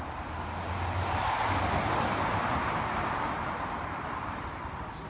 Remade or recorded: remade